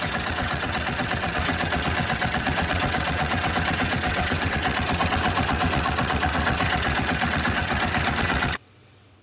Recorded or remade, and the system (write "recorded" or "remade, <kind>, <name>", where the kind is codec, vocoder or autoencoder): remade, vocoder, WaveNeXt